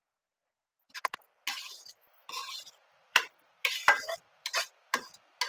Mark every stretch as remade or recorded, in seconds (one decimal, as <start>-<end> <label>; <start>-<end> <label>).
0.0-0.7 recorded; 0.7-1.2 remade; 1.2-2.0 recorded; 2.0-5.5 remade